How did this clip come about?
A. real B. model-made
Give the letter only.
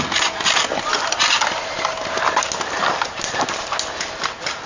A